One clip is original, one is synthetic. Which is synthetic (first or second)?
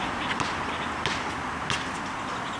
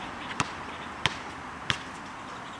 second